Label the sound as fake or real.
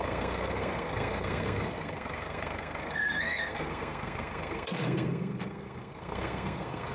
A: fake